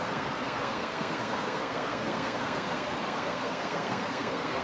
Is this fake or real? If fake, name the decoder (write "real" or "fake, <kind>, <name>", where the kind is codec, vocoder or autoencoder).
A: fake, codec, SNAC